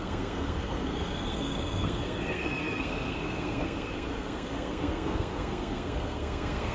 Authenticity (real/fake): fake